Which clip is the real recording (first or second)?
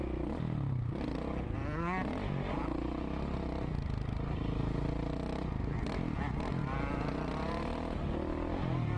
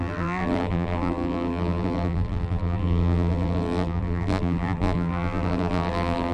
first